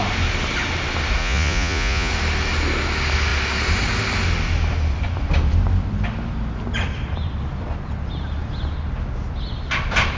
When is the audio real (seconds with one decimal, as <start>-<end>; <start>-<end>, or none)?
0.0-1.2; 2.1-10.2